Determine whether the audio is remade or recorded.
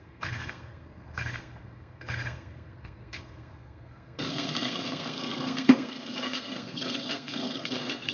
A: remade